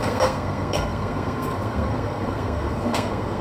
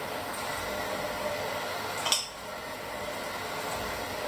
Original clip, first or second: second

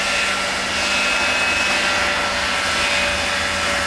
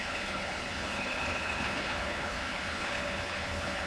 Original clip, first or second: first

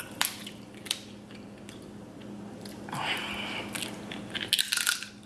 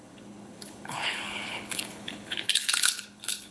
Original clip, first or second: first